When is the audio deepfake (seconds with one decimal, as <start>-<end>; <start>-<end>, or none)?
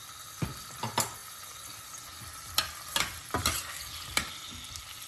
none